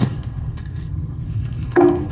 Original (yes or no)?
no